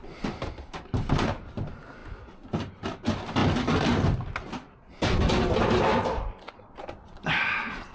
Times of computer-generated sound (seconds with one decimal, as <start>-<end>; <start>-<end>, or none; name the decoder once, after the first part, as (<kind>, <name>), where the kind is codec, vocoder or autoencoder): none